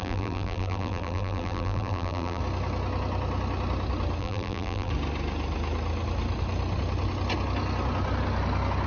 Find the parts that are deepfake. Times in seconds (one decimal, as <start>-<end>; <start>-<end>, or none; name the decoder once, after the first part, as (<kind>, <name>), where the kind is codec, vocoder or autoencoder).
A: 0.0-2.4 (vocoder, BigVGAN v2); 4.2-4.9